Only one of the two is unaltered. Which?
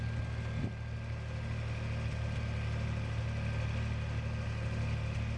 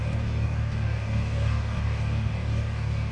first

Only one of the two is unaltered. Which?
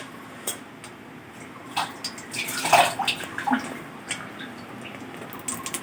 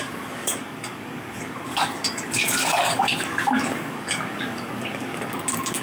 first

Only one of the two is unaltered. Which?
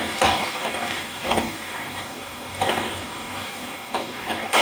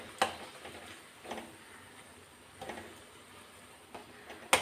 second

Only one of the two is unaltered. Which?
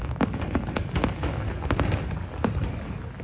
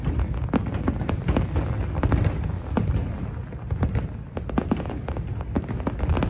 second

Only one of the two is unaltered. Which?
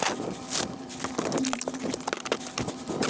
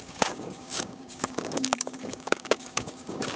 first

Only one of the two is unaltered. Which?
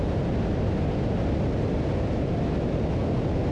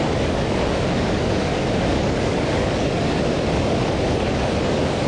first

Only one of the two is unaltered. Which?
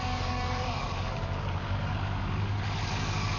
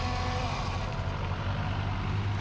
second